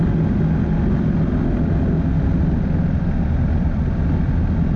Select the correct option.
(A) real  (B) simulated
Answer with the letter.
A